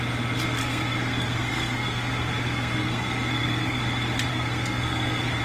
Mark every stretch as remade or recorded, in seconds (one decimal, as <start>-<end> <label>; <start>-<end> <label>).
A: 0.0-0.6 recorded; 0.6-3.8 remade; 3.8-4.3 recorded; 4.3-5.4 remade